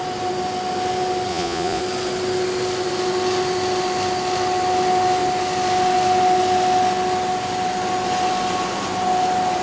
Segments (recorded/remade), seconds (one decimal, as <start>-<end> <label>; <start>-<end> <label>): 0.0-1.3 recorded; 1.3-1.8 remade; 1.8-9.6 recorded